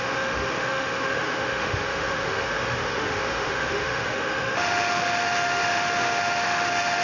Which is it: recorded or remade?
remade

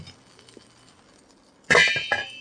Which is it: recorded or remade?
recorded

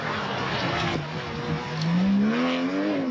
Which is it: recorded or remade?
recorded